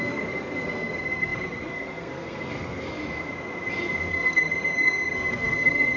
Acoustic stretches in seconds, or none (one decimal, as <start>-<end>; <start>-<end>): 3.0-4.1